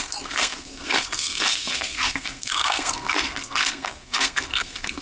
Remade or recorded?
remade